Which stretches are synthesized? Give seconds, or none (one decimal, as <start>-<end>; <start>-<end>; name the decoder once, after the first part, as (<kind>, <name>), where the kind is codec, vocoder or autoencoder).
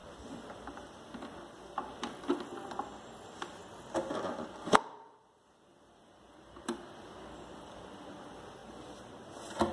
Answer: 0.0-0.8 (vocoder, BigVGAN v2); 3.6-8.2